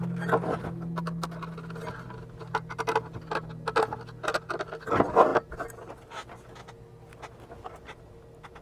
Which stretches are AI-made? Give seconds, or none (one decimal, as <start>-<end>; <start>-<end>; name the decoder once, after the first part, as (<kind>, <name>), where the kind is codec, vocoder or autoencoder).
none